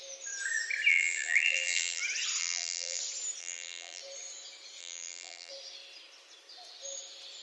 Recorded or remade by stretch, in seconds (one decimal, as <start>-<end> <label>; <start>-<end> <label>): 0.0-0.9 recorded; 0.9-2.0 remade; 2.0-2.4 recorded; 2.4-3.0 remade; 3.0-3.4 recorded; 3.4-4.0 remade; 4.0-4.8 recorded; 4.8-5.5 remade; 5.5-7.4 recorded